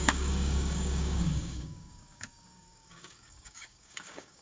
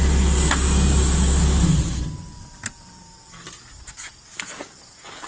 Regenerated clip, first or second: first